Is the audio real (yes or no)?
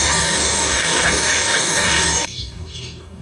no